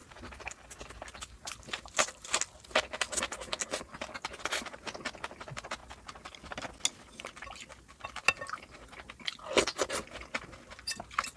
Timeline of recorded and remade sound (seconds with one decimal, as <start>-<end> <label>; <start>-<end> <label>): 0.0-11.4 recorded